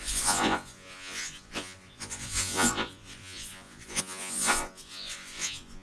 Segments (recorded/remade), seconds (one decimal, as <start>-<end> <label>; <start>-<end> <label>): 0.0-5.8 remade